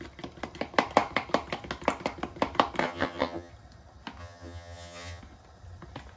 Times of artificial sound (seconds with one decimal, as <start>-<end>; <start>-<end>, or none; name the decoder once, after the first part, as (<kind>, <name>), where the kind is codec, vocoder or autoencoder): 2.8-3.5 (vocoder, HiFi-GAN); 4.2-5.2